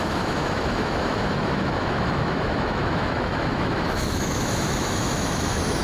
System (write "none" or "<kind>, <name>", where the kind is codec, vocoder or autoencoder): autoencoder, DAC-VAE